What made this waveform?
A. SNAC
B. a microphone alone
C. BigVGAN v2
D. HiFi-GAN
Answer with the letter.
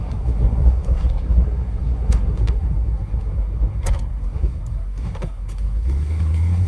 A